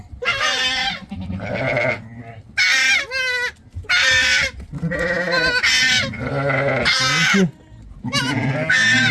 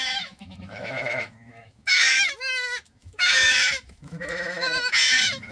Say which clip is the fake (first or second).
second